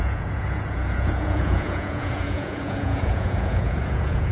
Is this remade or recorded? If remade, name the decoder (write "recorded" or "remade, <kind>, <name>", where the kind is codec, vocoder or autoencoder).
remade, vocoder, Vocos